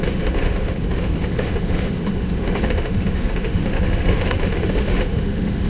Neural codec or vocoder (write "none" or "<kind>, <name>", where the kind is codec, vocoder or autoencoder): autoencoder, DAC-VAE